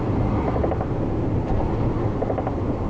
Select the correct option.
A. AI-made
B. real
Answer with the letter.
B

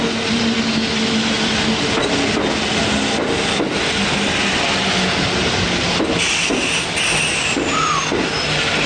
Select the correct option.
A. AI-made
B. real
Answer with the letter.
B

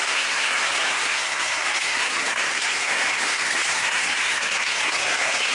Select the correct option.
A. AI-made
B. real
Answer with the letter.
A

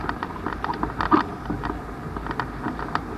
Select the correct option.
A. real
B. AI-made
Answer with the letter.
A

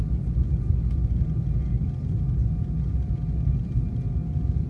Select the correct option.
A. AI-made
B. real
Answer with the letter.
B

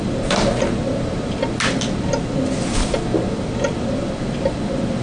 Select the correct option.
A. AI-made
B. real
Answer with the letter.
B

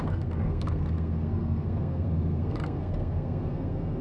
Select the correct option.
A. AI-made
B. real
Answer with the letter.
A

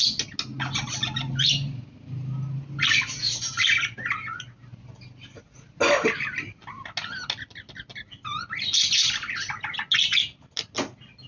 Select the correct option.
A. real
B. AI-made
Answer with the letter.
A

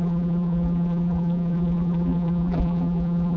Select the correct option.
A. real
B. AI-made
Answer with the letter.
B